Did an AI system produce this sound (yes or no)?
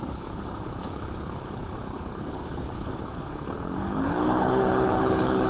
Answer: yes